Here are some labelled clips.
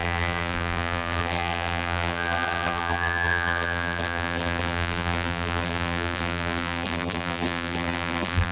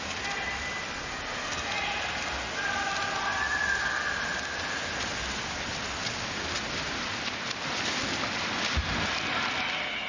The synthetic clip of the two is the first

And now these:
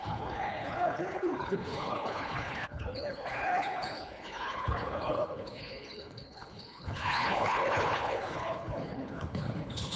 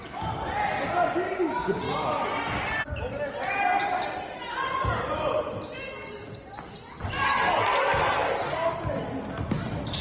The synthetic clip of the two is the first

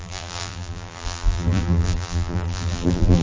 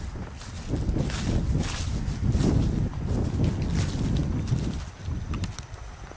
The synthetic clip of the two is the first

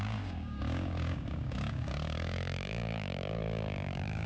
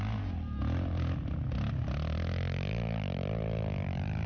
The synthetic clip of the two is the first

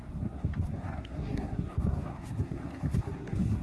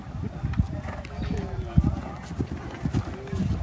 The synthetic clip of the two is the first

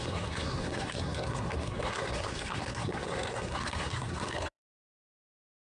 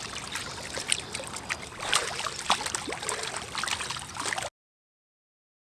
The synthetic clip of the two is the first